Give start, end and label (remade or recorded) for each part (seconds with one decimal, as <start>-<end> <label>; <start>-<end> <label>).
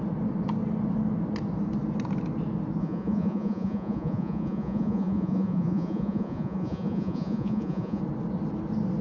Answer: 0.0-2.8 recorded; 2.8-8.0 remade; 8.0-9.0 recorded